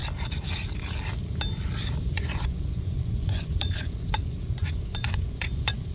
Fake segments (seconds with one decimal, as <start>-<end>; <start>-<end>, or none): 2.0-5.9